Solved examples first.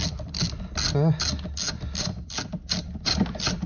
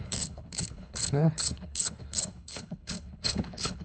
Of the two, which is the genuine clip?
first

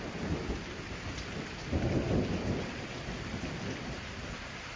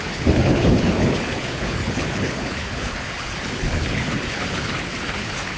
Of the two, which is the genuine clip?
first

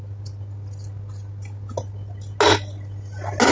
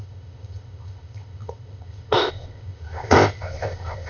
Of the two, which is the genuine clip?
first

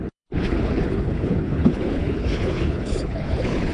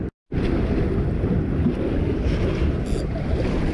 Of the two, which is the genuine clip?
second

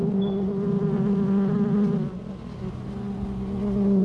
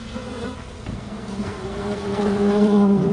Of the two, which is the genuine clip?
first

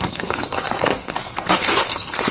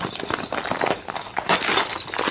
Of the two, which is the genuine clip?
second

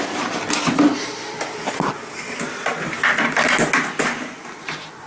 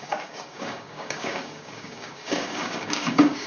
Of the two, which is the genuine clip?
first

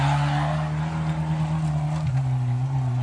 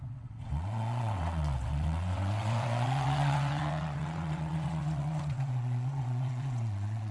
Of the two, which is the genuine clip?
first